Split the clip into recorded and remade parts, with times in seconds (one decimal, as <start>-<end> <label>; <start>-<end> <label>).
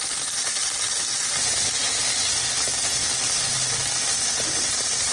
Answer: 0.0-5.1 recorded